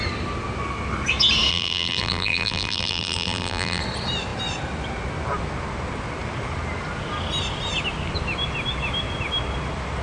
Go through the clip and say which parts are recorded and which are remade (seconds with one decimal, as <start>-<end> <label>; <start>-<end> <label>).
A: 0.0-1.5 recorded; 1.5-3.8 remade; 3.8-10.0 recorded